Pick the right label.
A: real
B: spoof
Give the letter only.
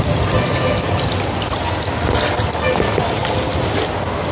A